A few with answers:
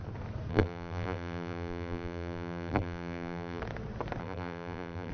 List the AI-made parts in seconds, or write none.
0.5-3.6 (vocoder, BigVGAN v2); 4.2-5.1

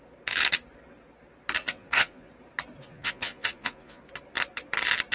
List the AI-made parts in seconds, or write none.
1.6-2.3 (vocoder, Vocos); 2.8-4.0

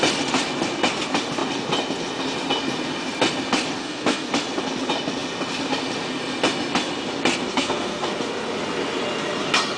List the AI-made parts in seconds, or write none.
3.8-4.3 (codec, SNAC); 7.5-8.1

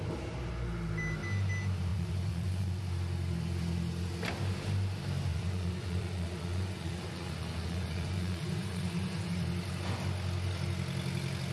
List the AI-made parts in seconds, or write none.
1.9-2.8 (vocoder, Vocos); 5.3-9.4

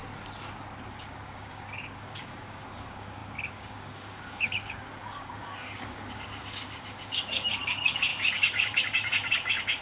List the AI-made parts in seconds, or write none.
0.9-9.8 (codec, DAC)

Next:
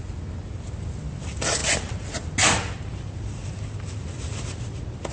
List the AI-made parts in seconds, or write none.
none

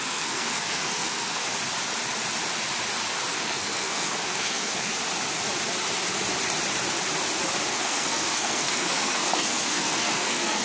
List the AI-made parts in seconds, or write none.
0.0-1.5 (codec, SNAC); 3.3-4.9; 7.7-10.6

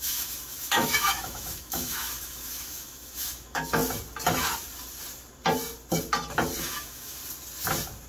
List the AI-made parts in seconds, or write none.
0.0-3.8 (autoencoder, DAC-VAE); 6.6-7.2